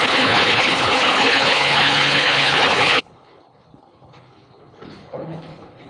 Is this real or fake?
fake